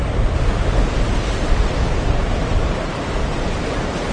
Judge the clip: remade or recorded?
remade